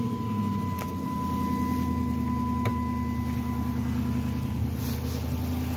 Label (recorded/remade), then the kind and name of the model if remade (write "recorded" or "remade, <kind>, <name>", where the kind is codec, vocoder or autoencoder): recorded